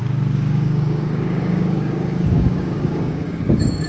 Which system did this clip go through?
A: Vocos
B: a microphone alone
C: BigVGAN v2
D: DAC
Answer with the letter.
D